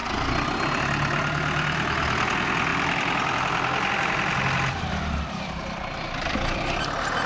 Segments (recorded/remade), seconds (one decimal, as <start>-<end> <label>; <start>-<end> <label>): 0.0-2.7 recorded; 2.7-6.8 remade; 6.8-7.3 recorded